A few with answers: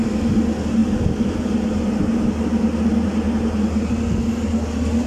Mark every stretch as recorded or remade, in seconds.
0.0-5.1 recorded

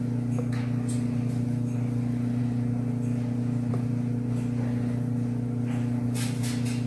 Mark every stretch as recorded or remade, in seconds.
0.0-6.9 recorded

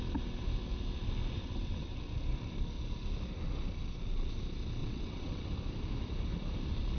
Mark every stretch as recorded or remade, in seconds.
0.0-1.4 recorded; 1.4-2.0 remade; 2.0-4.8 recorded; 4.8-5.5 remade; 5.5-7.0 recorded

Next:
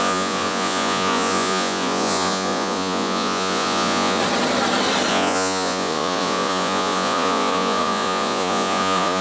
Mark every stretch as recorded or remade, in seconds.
0.0-4.2 remade; 4.2-5.1 recorded; 5.1-9.2 remade

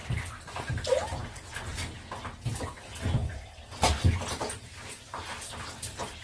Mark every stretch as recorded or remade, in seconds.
0.0-6.2 recorded

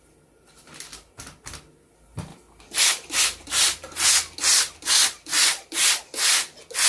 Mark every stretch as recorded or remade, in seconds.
0.0-5.3 recorded; 5.3-6.0 remade; 6.0-6.9 recorded